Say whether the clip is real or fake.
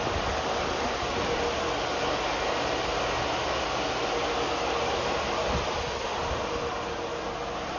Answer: real